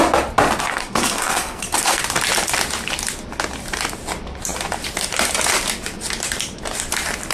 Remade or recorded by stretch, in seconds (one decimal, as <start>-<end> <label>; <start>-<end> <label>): 0.0-0.7 recorded; 0.7-2.0 remade; 2.0-7.3 recorded